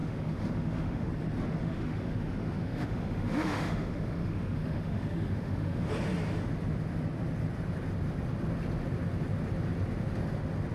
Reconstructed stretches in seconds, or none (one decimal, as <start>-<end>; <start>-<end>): 0.0-1.1; 1.6-5.9